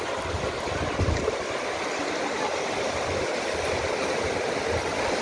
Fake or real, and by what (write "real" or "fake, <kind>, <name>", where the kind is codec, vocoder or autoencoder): real